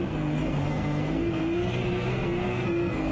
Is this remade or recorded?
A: remade